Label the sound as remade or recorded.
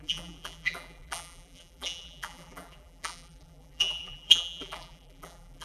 remade